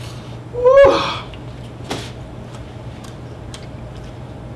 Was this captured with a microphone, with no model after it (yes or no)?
yes